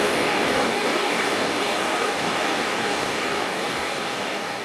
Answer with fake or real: fake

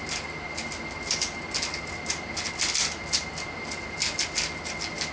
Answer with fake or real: real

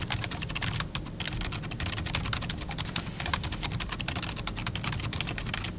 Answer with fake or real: real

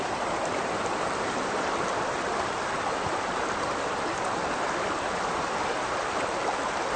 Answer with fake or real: fake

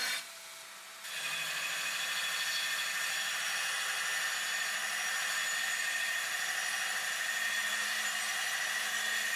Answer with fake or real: real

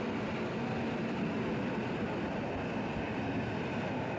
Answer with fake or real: real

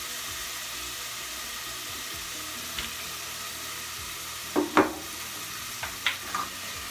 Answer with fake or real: real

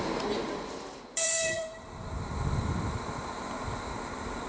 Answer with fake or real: fake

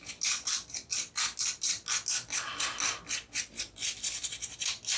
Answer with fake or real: real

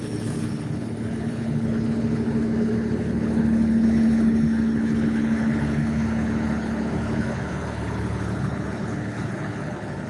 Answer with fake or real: fake